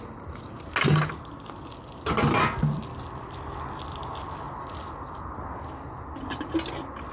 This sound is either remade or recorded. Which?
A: recorded